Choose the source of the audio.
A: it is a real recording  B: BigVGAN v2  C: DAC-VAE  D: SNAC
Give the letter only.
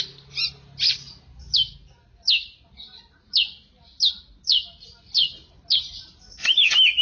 A